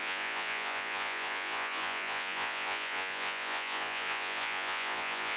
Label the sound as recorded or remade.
remade